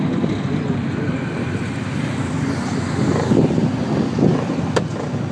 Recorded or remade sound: recorded